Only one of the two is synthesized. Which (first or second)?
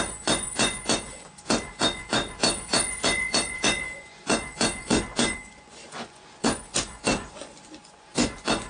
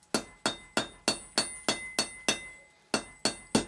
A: first